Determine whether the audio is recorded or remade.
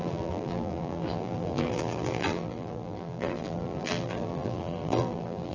remade